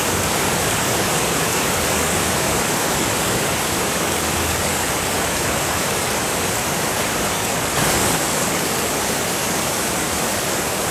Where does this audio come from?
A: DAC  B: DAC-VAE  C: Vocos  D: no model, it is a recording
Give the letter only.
A